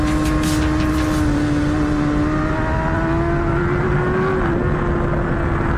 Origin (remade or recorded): recorded